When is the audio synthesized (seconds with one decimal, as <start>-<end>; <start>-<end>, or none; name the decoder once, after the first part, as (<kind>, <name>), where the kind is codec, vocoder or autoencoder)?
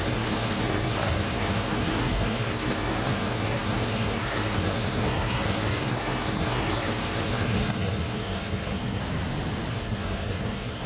0.0-9.0 (codec, SNAC); 9.7-10.9